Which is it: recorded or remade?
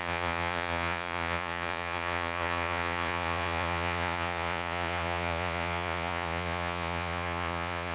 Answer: remade